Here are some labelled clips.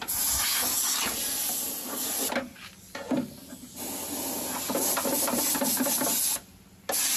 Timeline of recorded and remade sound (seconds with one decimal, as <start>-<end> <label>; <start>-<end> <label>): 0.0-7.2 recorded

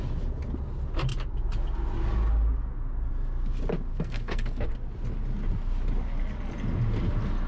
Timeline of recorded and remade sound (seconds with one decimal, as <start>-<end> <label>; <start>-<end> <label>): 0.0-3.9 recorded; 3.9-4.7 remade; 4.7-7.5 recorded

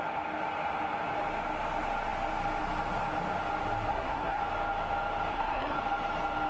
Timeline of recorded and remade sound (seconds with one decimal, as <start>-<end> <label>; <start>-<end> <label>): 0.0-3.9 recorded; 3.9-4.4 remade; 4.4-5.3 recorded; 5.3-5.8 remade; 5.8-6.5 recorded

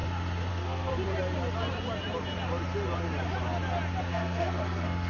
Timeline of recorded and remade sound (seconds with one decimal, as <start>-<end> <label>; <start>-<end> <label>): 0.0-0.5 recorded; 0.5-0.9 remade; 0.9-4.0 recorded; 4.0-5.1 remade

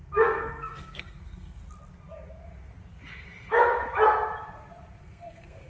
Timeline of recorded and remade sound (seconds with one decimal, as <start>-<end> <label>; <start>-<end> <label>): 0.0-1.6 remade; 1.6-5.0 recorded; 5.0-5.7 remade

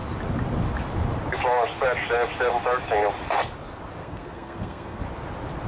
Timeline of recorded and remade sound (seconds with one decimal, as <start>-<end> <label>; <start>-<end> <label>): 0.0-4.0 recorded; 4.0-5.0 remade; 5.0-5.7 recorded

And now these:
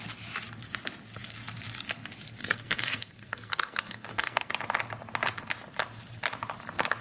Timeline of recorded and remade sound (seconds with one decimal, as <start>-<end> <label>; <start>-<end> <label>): 0.0-2.4 recorded; 2.4-4.5 remade; 4.5-7.0 recorded